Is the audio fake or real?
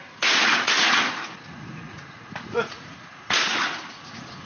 fake